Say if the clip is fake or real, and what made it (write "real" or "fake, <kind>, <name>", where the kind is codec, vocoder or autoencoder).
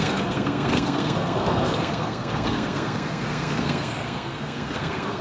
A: fake, codec, SNAC